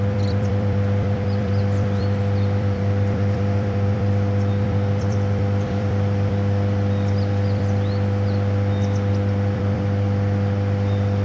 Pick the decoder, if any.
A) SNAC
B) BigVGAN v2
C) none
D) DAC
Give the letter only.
B